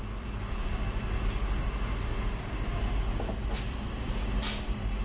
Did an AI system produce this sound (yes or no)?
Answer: no